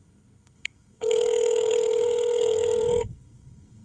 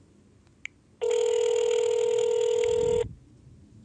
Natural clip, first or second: second